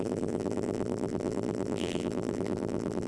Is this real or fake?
fake